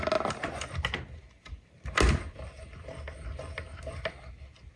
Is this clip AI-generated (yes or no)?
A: no